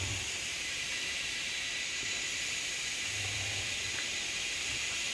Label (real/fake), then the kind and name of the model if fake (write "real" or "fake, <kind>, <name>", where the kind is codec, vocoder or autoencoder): real